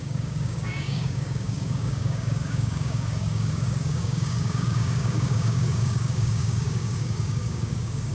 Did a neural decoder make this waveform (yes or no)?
yes